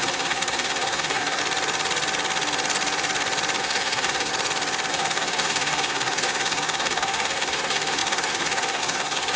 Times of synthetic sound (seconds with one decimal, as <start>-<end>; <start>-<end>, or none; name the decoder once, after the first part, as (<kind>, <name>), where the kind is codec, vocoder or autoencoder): 0.0-1.4 (codec, SNAC); 3.6-4.3; 4.9-9.4